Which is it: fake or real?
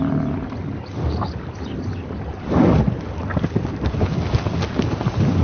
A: real